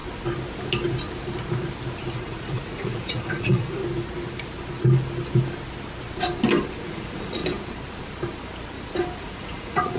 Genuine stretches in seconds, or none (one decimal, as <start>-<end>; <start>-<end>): 0.0-2.1; 3.8-6.8; 7.4-9.2